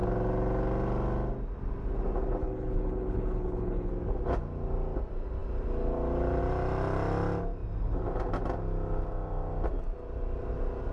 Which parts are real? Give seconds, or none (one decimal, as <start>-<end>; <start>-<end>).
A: 0.0-2.4; 3.9-10.9